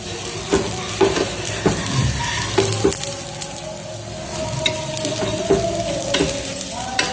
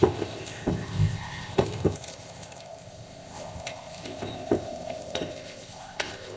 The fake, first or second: second